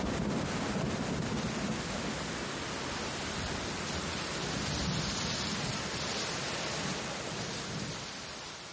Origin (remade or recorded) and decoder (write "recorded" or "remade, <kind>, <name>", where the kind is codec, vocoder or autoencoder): recorded